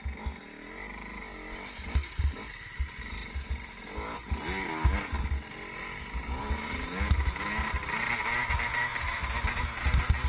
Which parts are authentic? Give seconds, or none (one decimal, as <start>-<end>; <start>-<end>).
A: 0.0-10.3

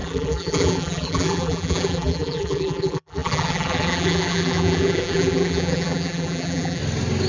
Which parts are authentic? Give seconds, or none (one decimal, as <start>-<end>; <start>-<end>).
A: 6.8-7.3

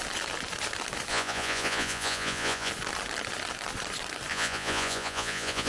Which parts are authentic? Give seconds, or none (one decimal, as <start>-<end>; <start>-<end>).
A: 0.0-1.1; 2.7-4.3

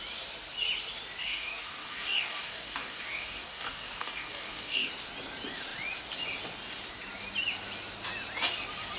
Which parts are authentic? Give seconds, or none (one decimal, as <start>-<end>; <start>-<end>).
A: 0.0-1.2; 4.9-9.0